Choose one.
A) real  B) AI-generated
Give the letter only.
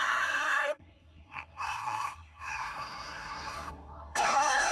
B